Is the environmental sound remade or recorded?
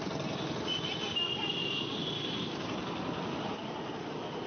recorded